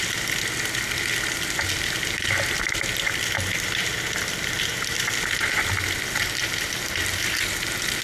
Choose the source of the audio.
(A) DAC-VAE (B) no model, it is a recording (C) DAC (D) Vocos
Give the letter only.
B